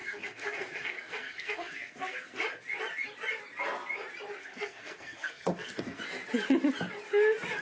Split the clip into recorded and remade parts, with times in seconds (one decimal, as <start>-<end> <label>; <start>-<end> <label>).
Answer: 0.0-2.4 remade; 2.4-4.4 recorded; 4.4-6.0 remade; 6.0-7.6 recorded